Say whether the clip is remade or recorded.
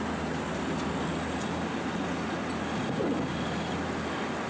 recorded